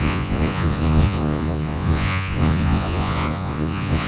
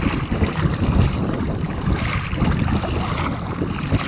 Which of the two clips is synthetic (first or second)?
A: first